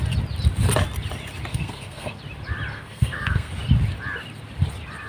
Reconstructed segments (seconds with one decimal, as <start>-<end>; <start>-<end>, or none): 1.5-2.2; 2.7-3.5